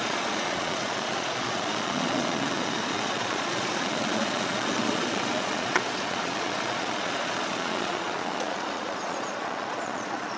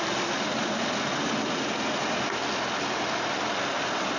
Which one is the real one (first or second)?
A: second